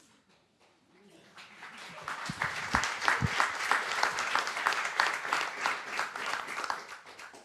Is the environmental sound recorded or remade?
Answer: recorded